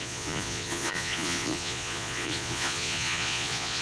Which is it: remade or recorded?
remade